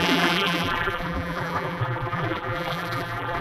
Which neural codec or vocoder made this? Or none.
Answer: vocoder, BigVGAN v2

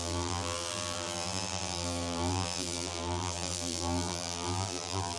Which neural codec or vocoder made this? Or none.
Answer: vocoder, BigVGAN v2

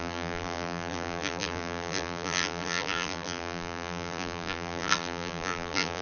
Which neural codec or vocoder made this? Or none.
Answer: vocoder, BigVGAN v2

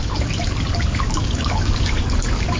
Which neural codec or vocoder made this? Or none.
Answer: codec, DAC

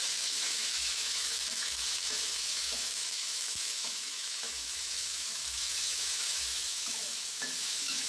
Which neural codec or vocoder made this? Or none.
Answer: autoencoder, DAC-VAE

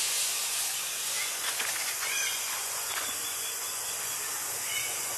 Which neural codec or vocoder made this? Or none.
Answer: vocoder, Vocos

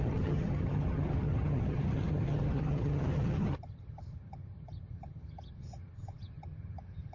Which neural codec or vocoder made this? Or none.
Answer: vocoder, HiFi-GAN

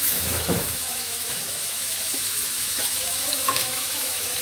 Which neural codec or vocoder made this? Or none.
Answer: autoencoder, DAC-VAE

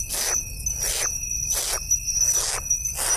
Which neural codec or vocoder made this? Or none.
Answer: none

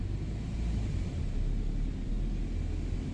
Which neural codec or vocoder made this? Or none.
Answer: none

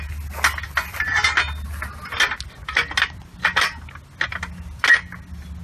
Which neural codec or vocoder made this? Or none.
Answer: none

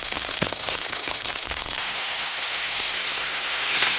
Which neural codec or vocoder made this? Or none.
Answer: codec, SNAC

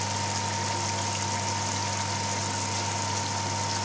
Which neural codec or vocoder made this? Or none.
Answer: none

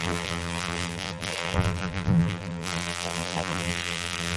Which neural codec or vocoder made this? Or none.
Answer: vocoder, BigVGAN v2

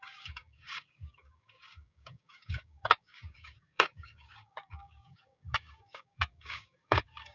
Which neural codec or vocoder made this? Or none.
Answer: codec, DAC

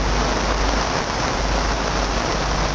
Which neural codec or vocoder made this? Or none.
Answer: none